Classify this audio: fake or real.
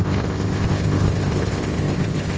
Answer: fake